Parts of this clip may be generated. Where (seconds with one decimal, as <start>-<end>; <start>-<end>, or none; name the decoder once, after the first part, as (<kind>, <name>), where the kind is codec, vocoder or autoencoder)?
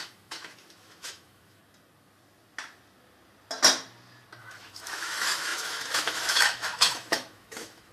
0.0-1.6 (autoencoder, DAC-VAE); 4.4-7.9